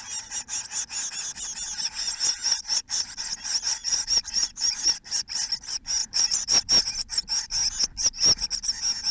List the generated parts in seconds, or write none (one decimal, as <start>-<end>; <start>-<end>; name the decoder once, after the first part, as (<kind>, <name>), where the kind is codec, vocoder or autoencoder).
3.8-4.7 (vocoder, BigVGAN v2); 6.0-6.7